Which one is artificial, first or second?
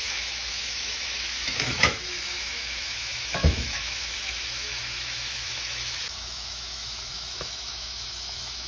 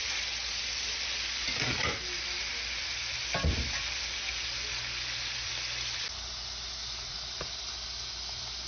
first